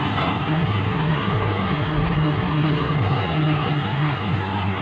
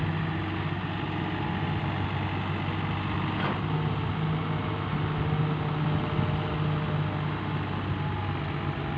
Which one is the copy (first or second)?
first